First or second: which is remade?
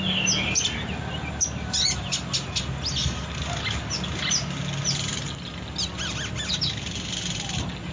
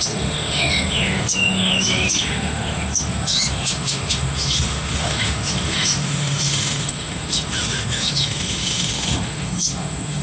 second